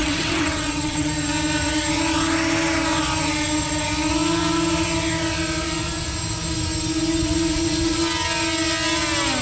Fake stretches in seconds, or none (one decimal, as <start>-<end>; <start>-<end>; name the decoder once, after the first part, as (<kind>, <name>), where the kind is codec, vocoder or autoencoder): 0.0-1.1 (vocoder, WaveNeXt)

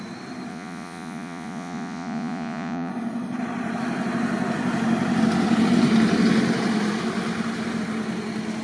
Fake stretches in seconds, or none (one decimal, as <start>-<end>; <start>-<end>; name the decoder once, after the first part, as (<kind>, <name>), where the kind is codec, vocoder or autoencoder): 0.5-2.9 (vocoder, Vocos)

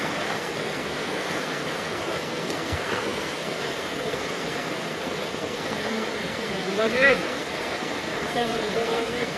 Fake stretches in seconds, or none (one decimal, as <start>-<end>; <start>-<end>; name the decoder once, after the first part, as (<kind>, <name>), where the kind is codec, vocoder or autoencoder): 0.0-9.4 (codec, SNAC)

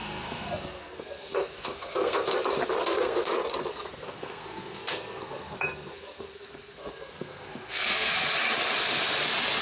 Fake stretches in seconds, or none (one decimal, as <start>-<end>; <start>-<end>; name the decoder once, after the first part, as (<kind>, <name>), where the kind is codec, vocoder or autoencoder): 0.0-2.3 (codec, SNAC); 2.8-3.3; 3.7-8.1

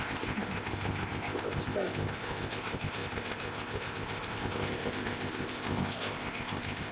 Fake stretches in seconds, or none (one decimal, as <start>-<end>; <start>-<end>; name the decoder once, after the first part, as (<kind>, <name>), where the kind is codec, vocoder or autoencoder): 0.0-6.9 (codec, ZipCodec)

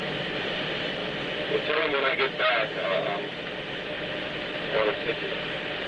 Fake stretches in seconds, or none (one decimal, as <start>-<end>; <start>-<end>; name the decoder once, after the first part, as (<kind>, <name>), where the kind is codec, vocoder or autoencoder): 0.0-1.0 (vocoder, BigVGAN v2); 4.1-5.9

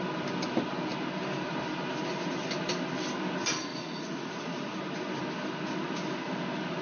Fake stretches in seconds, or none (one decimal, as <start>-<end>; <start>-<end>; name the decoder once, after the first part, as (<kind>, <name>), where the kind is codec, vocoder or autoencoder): 3.7-4.8 (vocoder, Vocos)

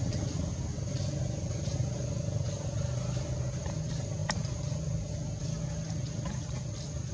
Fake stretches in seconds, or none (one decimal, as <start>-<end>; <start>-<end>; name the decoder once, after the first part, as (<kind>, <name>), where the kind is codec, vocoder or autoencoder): none